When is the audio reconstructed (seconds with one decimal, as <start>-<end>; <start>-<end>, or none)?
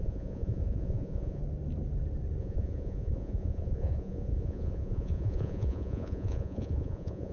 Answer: 0.0-1.4; 2.4-7.3